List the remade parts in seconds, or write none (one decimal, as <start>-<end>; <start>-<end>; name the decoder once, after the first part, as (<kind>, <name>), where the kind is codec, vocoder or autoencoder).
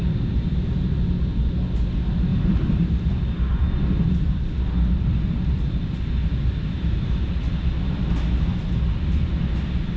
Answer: 2.3-3.6 (vocoder, BigVGAN v2); 6.2-7.3